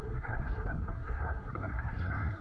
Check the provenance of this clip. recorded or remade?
remade